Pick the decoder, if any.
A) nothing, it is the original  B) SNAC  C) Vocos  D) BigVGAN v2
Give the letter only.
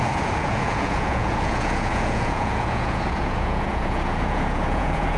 C